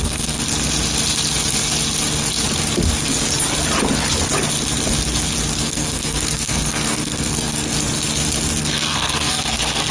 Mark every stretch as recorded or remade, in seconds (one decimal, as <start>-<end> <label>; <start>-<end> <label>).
0.0-0.4 remade; 0.4-5.6 recorded; 5.6-7.7 remade; 7.7-8.6 recorded; 8.6-9.9 remade